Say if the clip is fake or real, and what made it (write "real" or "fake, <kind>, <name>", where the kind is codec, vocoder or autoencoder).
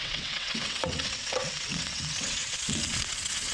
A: fake, vocoder, WaveNeXt